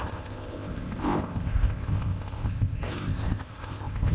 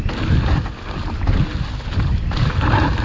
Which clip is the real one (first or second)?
second